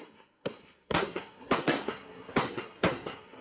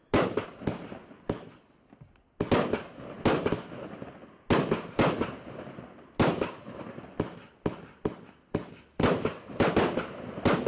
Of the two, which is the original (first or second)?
second